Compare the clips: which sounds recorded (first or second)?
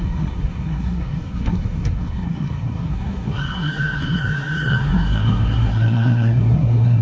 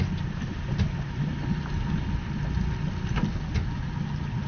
second